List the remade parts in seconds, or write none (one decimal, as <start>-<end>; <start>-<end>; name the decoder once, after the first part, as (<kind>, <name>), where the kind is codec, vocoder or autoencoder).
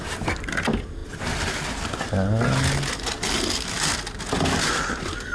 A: none